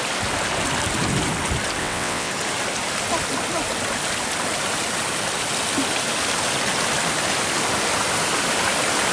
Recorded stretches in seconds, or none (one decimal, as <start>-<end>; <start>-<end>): 0.0-1.8; 2.3-9.1